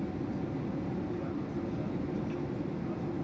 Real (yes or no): yes